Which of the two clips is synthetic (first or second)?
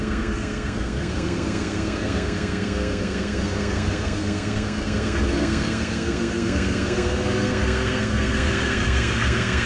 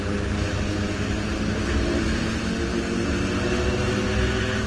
first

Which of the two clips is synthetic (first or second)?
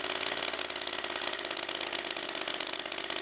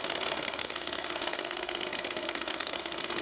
second